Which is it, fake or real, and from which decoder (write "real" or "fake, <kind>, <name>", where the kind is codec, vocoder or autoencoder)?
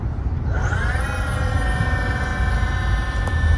real